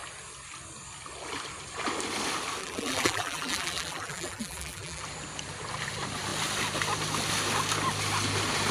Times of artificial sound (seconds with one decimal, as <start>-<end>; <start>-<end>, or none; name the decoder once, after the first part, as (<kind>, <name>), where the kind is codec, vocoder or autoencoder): 2.6-5.0 (vocoder, BigVGAN v2)